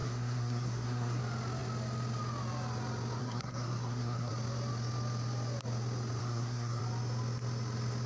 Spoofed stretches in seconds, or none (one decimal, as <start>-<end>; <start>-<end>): 0.0-1.2; 3.2-4.3; 6.2-6.8